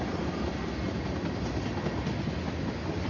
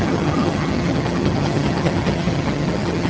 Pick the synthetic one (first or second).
second